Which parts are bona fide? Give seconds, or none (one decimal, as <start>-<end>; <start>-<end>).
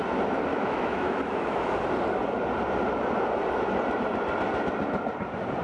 0.0-0.5; 1.8-5.6